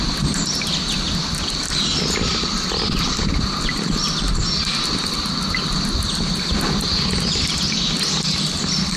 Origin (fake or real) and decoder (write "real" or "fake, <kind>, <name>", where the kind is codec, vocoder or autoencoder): real